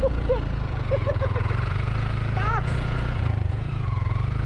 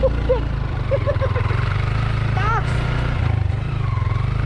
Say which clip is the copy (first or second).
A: first